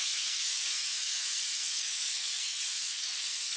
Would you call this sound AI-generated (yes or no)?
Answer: yes